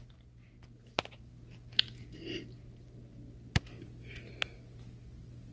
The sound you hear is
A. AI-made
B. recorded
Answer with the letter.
B